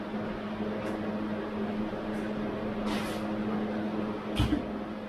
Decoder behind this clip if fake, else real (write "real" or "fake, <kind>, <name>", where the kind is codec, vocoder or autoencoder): real